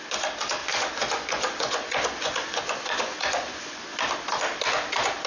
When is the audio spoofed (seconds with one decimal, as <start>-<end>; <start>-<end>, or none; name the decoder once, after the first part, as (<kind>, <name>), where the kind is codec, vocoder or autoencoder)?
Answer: 0.6-3.8 (vocoder, Vocos)